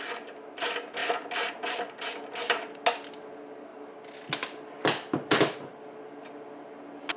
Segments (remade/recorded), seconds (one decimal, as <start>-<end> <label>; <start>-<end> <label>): 0.0-7.2 recorded